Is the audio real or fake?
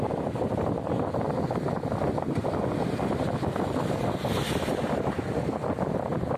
real